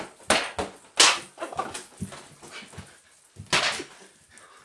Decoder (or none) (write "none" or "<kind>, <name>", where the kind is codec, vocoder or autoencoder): none